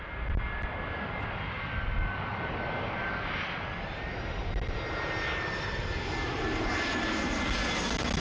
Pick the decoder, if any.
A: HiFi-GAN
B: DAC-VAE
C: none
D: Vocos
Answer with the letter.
C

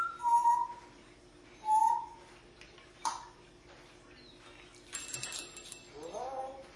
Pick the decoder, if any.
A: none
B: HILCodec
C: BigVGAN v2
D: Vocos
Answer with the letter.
A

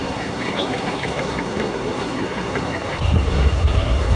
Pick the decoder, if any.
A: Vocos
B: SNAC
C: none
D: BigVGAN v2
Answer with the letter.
B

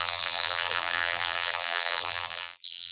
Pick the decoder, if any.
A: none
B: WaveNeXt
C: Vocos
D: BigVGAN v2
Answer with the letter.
D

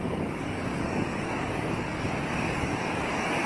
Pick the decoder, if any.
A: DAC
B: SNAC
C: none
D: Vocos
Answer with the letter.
A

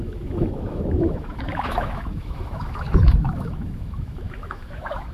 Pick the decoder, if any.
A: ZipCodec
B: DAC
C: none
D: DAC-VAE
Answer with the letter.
D